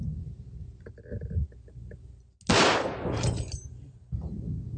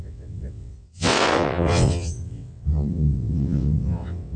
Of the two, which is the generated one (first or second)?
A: second